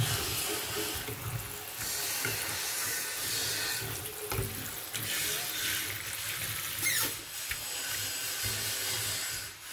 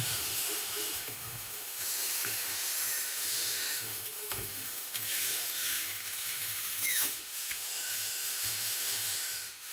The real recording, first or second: first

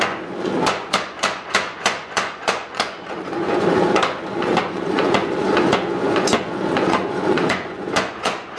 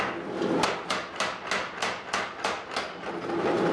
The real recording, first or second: second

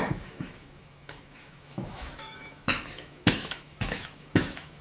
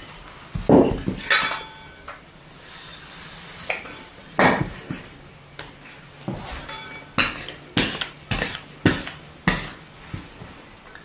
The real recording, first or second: second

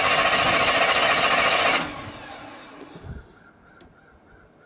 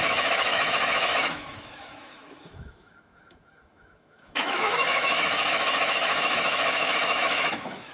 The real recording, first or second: first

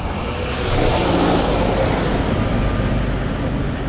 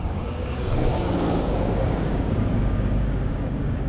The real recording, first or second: first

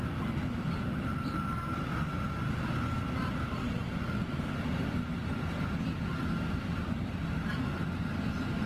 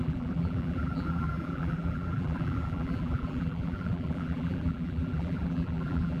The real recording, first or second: first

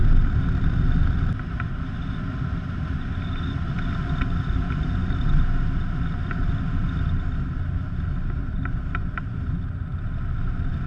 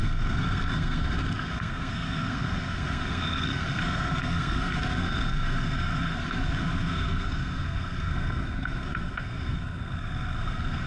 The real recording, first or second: first